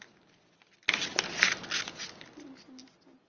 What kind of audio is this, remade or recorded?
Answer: recorded